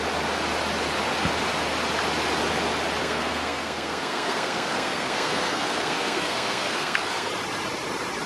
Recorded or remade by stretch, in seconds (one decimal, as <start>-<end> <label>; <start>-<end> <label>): 0.0-3.0 recorded; 3.0-7.3 remade; 7.3-8.3 recorded

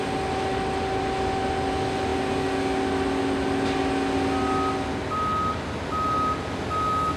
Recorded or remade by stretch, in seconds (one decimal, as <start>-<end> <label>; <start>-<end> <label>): 0.0-7.2 recorded

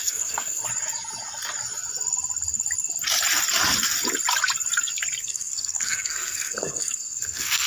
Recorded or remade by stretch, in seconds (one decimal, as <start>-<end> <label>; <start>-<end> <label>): 0.0-0.6 remade; 0.6-5.2 recorded; 5.2-7.7 remade

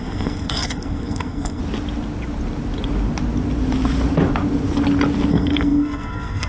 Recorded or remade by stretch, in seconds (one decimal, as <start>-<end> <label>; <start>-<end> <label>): 0.0-1.6 remade; 1.6-5.3 recorded; 5.3-6.5 remade

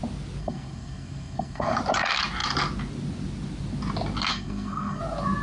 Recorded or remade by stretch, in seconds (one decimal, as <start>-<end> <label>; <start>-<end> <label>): 0.0-0.4 recorded; 0.4-1.8 remade; 1.8-4.3 recorded; 4.3-5.0 remade; 5.0-5.4 recorded

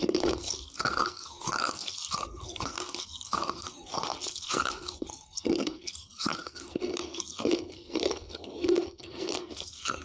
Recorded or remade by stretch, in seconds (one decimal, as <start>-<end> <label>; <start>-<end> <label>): 0.0-10.0 remade

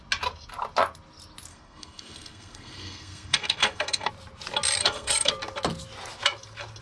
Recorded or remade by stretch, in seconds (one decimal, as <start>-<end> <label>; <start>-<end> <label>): 0.0-1.5 recorded; 1.5-4.1 remade; 4.1-4.8 recorded; 4.8-5.3 remade; 5.3-6.8 recorded

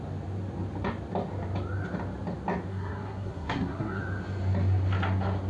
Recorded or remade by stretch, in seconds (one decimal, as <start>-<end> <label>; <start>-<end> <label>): 0.0-2.7 recorded; 2.7-4.0 remade; 4.0-5.5 recorded